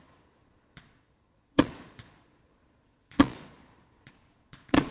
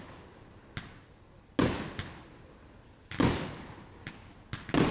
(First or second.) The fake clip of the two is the first